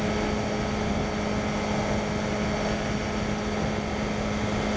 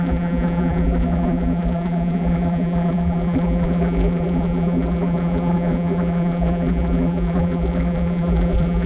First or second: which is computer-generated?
second